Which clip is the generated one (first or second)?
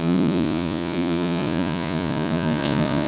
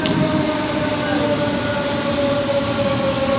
first